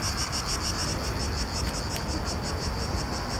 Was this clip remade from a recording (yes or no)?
no